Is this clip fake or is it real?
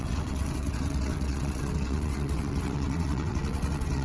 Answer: fake